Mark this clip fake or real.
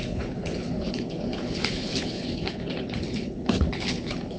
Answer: fake